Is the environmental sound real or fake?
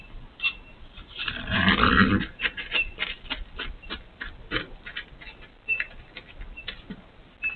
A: real